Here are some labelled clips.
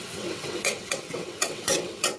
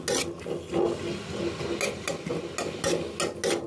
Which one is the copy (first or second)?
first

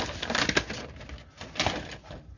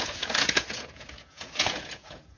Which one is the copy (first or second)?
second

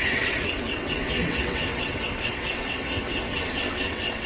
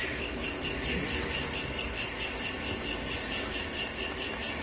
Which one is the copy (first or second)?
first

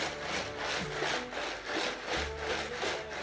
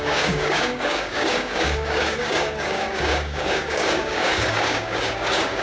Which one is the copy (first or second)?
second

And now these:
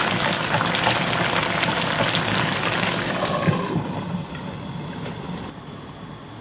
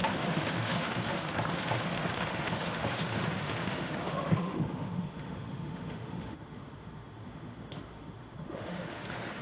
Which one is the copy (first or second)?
second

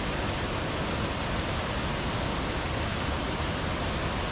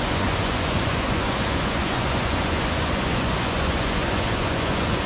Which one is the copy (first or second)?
second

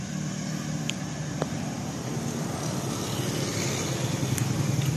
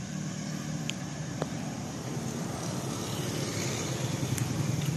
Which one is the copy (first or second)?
second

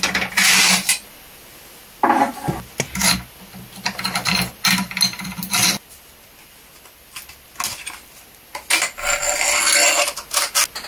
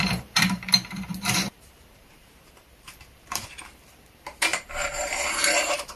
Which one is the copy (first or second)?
second